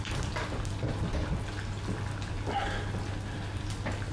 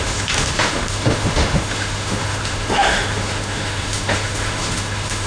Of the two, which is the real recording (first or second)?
first